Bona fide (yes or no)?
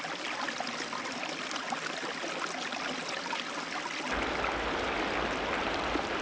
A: yes